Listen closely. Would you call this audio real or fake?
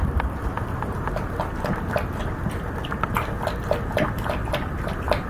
real